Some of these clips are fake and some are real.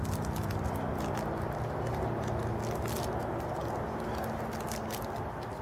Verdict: real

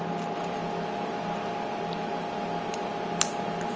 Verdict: real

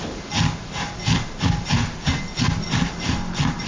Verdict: real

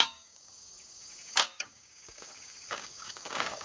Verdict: fake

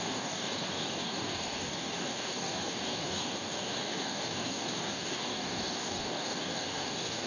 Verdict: fake